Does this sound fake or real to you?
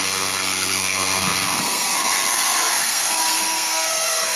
fake